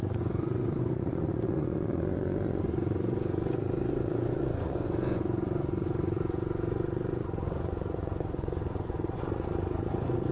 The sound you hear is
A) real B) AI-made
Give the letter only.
B